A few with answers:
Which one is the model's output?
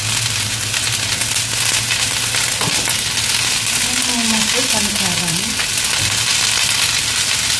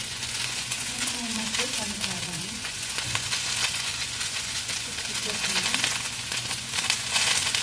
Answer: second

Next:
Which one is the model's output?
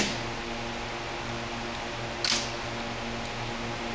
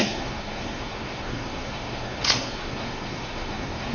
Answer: second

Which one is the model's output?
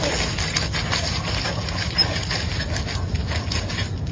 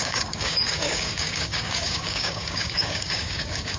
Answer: second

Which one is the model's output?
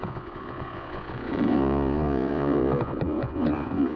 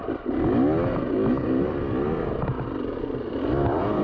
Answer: first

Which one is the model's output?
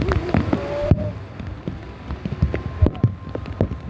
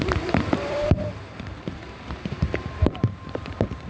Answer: second